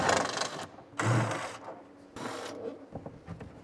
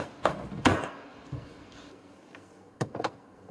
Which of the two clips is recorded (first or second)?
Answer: first